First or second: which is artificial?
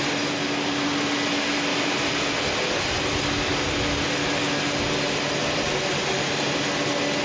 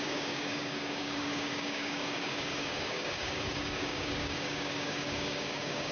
second